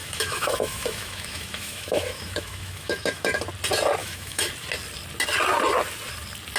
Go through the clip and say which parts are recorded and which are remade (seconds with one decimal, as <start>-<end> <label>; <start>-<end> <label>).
0.0-3.4 remade; 3.4-4.0 recorded; 4.0-4.5 remade; 4.5-6.6 recorded